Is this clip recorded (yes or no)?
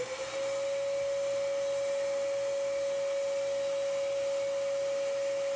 yes